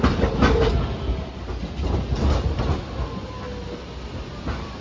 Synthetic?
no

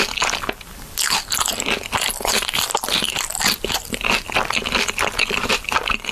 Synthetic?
no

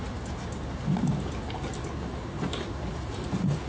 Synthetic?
no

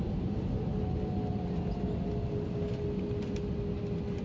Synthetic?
no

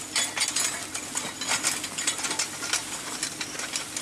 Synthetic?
no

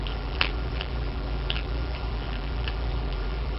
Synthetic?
yes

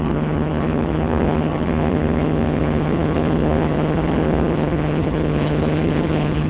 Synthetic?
yes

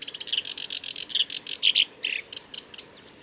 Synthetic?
no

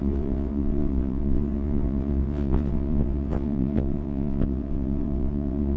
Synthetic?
yes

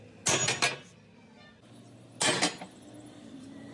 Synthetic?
no